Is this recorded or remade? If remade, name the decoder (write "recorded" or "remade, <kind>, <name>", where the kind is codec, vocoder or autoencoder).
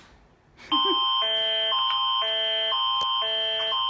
recorded